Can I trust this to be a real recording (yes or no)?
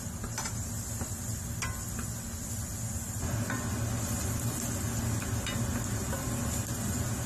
yes